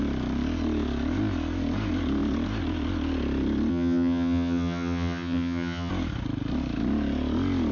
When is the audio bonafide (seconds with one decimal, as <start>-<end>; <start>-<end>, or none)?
0.0-3.7; 5.9-7.7